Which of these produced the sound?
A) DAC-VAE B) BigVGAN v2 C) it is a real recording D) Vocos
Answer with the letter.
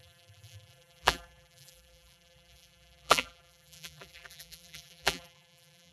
B